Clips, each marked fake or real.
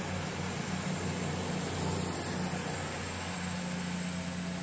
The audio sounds real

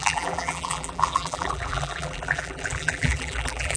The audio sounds fake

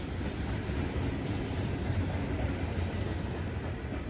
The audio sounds real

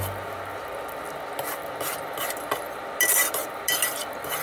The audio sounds real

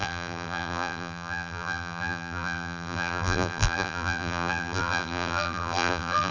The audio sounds fake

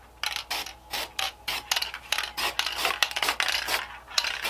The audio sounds real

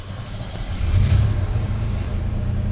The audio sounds real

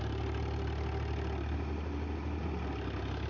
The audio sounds real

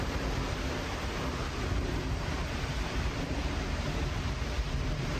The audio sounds fake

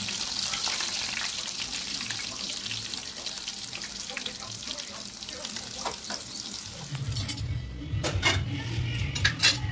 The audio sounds real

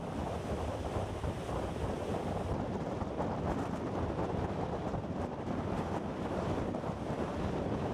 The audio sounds fake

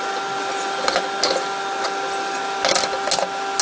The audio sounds real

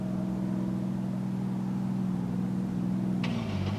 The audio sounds real